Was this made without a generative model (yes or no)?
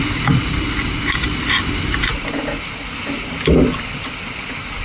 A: yes